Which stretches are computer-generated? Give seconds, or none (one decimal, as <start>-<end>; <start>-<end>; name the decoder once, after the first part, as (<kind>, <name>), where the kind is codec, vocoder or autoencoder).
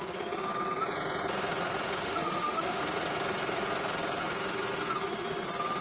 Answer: 2.0-2.8 (autoencoder, DAC-VAE)